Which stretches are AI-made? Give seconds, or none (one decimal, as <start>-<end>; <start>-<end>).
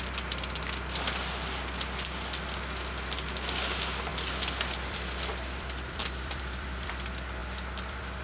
4.1-6.9; 7.4-8.2